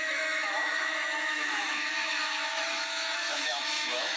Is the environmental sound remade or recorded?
remade